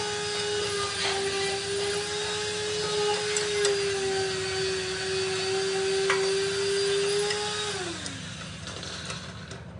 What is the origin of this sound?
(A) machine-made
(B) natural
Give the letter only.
B